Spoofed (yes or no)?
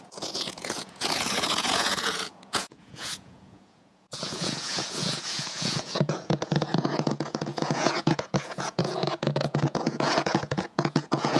yes